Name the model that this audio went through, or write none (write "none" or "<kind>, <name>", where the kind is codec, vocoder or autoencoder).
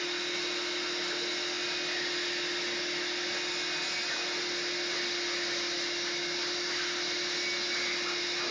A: none